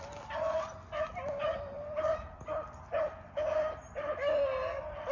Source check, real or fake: real